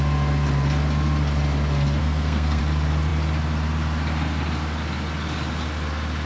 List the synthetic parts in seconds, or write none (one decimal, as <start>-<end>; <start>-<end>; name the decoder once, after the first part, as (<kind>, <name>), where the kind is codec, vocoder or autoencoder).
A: 2.0-2.6 (codec, SNAC)